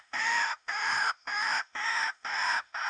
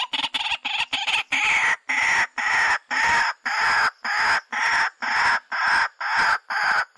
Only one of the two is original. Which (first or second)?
second